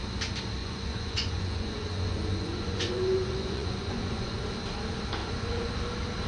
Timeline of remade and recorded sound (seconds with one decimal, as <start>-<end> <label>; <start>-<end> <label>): 0.0-0.6 recorded; 0.6-4.4 remade; 4.4-5.2 recorded; 5.2-5.7 remade; 5.7-6.3 recorded